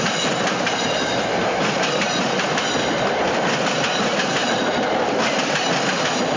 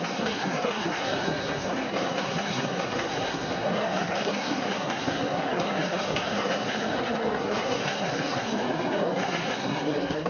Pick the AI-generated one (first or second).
second